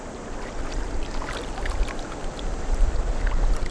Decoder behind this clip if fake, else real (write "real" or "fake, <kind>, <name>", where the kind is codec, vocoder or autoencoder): real